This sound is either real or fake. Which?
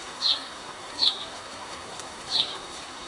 fake